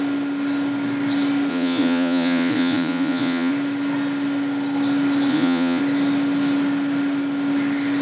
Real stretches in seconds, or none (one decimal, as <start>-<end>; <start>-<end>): 0.0-1.5; 3.5-5.3; 5.8-8.0